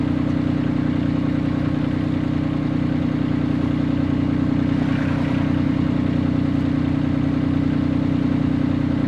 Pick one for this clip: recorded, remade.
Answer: recorded